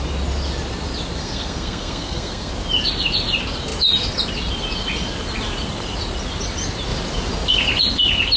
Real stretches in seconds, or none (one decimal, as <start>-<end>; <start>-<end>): 0.0-1.2; 2.5-8.4